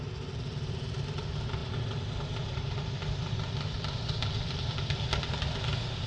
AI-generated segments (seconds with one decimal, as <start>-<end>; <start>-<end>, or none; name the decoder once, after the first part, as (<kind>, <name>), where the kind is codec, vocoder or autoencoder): 1.6-5.3 (vocoder, BigVGAN v2)